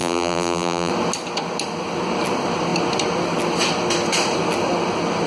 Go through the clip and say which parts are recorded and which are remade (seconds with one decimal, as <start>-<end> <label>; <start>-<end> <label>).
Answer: 0.0-0.9 remade; 0.9-5.3 recorded